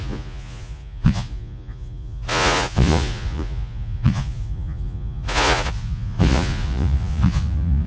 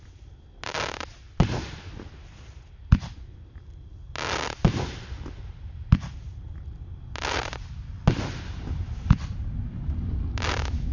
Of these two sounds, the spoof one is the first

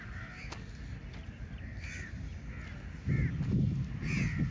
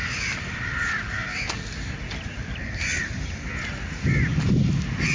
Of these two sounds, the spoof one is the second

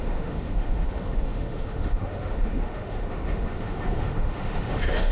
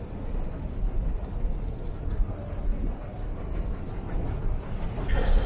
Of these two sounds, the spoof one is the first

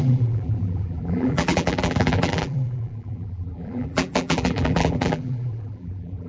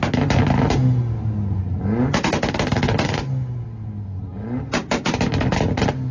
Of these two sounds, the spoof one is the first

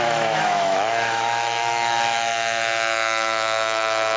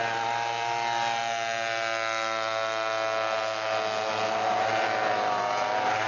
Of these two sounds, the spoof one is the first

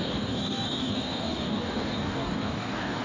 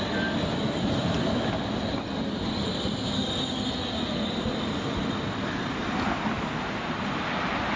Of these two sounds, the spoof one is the first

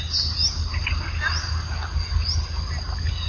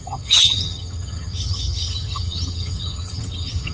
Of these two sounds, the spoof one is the second